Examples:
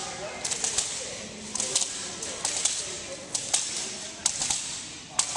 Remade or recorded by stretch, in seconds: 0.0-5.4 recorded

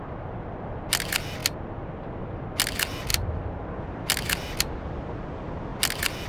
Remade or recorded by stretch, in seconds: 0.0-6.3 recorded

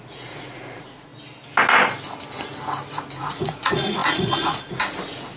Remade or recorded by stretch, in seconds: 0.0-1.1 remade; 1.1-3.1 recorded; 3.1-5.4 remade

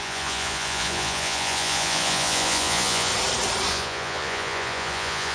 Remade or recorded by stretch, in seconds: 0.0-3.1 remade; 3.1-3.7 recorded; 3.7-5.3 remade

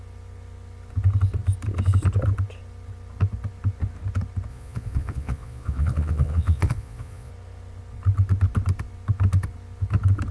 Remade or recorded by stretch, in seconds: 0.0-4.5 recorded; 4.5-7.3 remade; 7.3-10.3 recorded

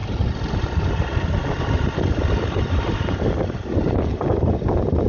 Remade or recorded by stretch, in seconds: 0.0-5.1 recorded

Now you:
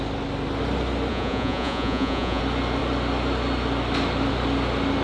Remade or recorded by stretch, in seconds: 0.0-1.1 recorded; 1.1-2.4 remade; 2.4-5.0 recorded